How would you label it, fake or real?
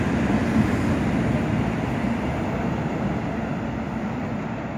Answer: real